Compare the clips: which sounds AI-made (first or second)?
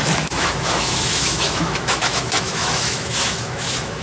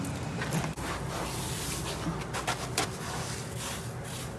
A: first